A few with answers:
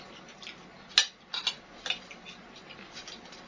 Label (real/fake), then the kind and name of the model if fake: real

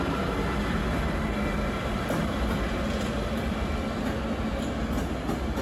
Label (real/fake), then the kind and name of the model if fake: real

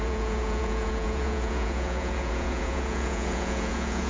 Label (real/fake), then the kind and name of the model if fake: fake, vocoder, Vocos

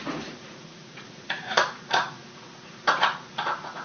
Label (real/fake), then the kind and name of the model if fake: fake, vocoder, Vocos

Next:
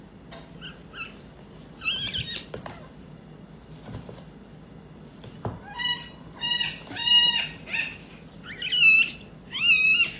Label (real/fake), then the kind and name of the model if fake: real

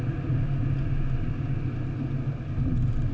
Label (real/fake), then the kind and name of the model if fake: real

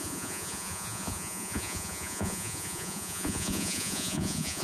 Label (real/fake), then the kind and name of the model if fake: fake, vocoder, Vocos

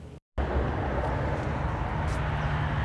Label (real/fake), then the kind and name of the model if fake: real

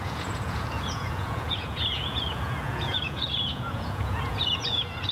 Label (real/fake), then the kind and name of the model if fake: fake, vocoder, Vocos